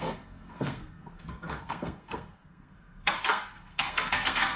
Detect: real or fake fake